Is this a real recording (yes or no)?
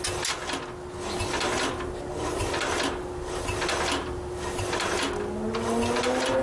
yes